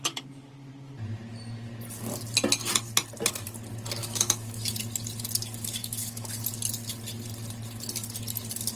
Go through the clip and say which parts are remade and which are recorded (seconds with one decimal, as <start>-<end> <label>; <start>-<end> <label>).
0.0-4.0 recorded; 4.0-4.7 remade; 4.7-5.8 recorded; 5.8-6.3 remade; 6.3-8.8 recorded